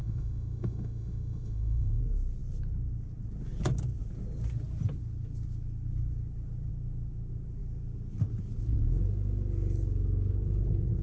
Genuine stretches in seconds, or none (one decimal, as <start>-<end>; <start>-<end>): 2.0-11.0